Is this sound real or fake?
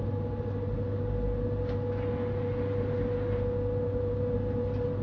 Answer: real